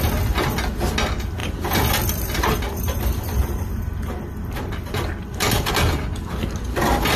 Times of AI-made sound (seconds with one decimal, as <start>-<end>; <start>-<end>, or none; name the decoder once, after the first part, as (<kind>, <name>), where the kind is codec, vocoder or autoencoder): 1.4-5.7 (vocoder, BigVGAN v2)